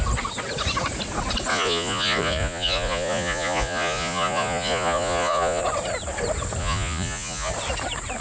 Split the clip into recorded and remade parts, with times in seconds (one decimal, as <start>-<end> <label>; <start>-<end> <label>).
0.0-1.5 recorded; 1.5-5.6 remade; 5.6-6.6 recorded; 6.6-7.5 remade; 7.5-8.2 recorded